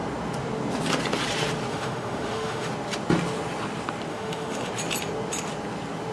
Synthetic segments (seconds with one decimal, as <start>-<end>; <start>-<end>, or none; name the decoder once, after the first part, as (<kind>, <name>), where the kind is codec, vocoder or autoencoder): 1.7-2.7 (autoencoder, DAC-VAE); 4.1-4.7